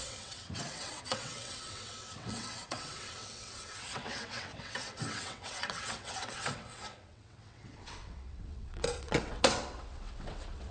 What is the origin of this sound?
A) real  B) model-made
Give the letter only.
B